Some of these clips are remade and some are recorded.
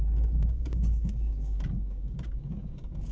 remade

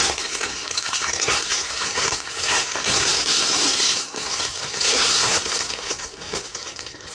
remade